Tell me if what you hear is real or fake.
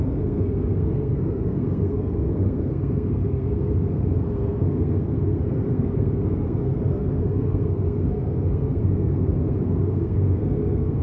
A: fake